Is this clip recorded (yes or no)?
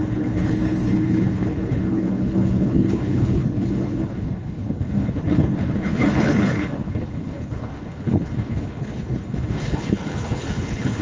no